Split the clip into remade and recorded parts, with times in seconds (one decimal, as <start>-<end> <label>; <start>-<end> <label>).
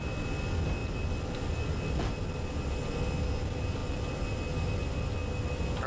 0.0-5.9 recorded